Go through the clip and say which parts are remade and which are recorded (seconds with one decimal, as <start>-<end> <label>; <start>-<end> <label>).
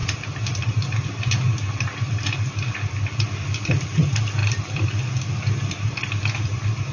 0.0-6.9 recorded